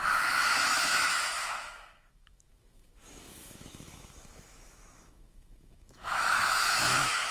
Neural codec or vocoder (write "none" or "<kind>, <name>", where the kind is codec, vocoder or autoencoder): autoencoder, DAC-VAE